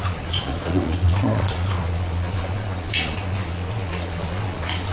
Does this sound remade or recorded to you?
remade